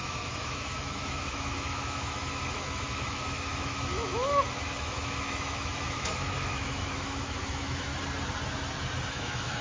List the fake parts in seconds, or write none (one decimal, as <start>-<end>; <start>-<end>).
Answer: 0.0-7.9; 9.1-9.6